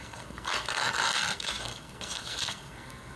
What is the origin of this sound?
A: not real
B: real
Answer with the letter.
A